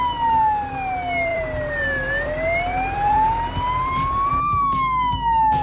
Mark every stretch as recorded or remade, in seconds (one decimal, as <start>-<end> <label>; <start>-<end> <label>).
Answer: 0.0-1.3 recorded; 1.3-4.3 remade; 4.3-5.6 recorded